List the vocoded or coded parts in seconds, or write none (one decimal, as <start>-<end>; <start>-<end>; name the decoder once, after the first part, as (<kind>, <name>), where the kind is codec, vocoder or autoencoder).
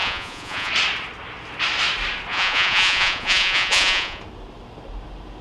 0.0-0.7 (vocoder, Vocos); 2.3-4.2